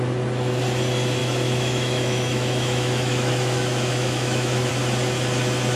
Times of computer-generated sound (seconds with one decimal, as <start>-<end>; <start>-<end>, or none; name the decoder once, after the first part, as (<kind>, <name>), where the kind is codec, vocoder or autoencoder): 1.2-4.7 (autoencoder, DAC-VAE)